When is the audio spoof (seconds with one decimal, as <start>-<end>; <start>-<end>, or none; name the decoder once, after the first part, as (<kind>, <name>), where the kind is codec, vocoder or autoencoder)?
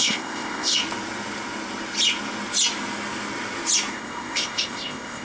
0.0-0.8 (codec, ZipCodec); 3.9-5.2